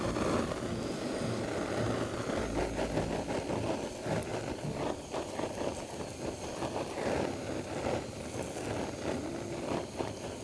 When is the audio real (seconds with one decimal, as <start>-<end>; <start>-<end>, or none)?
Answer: 0.0-4.3; 5.4-10.4